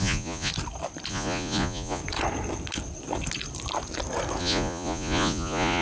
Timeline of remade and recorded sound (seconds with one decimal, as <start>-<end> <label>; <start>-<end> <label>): 0.0-0.5 remade; 0.5-1.1 recorded; 1.1-2.0 remade; 2.0-4.4 recorded; 4.4-5.8 remade